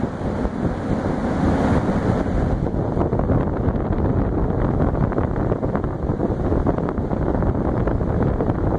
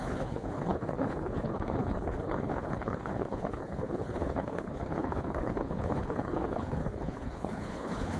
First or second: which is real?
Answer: first